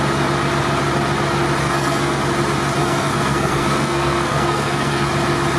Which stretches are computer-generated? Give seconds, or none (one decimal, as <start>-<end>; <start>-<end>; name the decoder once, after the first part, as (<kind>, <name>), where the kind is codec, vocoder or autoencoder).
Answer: 1.6-2.2 (codec, SNAC); 2.8-5.1